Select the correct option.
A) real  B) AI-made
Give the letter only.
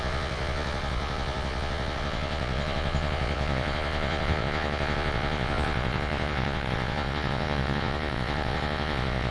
B